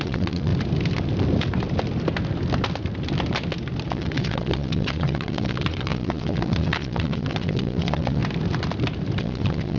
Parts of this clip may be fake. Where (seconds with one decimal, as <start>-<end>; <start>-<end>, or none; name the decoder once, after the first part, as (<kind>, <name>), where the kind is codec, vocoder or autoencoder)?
0.0-0.5 (vocoder, Vocos); 3.9-8.2; 9.2-9.8